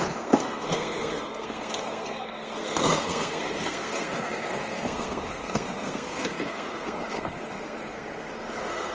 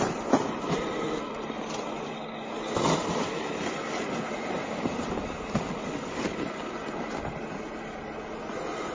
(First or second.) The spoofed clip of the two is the first